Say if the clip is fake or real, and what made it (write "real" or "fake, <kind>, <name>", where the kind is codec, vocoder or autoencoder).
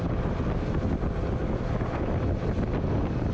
real